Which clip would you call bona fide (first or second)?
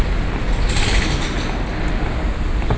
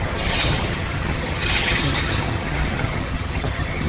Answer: first